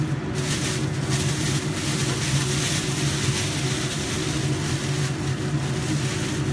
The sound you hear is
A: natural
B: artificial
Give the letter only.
A